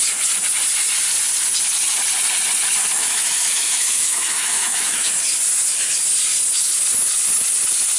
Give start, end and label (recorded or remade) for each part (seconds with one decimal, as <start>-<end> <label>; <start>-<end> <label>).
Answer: 0.0-3.0 recorded; 3.0-5.1 remade; 5.1-8.0 recorded